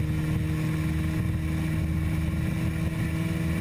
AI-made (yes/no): no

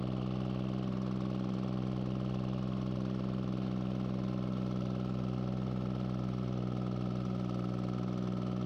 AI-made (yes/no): no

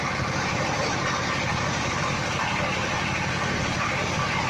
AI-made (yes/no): no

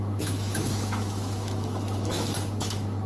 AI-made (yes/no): yes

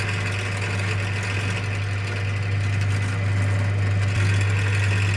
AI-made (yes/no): no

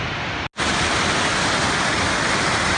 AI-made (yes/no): no